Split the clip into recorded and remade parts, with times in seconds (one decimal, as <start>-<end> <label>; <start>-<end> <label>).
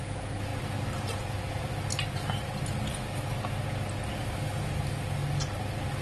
0.0-6.0 recorded